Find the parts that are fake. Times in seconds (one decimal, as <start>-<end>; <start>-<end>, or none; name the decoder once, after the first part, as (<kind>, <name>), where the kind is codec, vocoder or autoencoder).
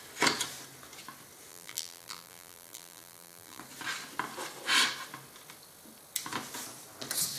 1.5-3.6 (vocoder, BigVGAN v2)